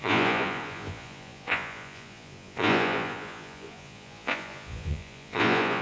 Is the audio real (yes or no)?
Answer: no